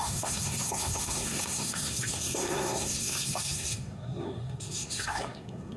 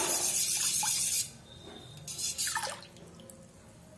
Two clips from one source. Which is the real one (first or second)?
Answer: second